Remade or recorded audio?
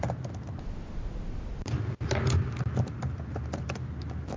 recorded